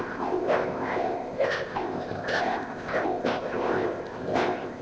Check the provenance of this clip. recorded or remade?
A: remade